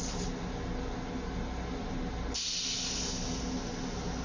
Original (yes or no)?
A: yes